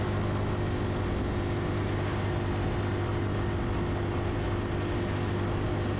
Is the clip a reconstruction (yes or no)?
no